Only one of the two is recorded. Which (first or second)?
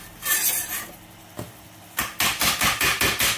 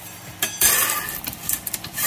first